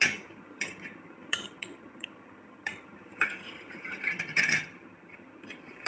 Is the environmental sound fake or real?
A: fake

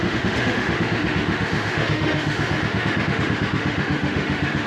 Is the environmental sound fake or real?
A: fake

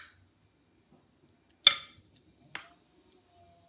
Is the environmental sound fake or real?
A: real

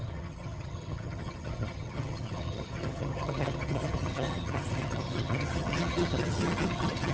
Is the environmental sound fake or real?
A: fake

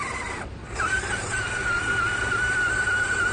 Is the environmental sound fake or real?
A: fake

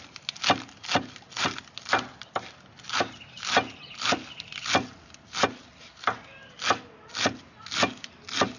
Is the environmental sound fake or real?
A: real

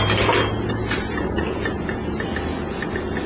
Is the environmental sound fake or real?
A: real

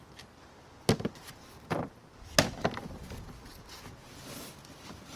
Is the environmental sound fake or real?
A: real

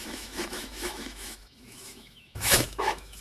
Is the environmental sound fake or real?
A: fake